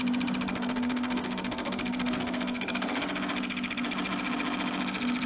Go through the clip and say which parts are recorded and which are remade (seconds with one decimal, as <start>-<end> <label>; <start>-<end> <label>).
0.0-0.5 recorded; 0.5-3.0 remade; 3.0-5.3 recorded